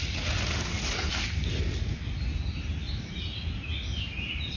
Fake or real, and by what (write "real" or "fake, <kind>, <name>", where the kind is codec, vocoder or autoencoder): real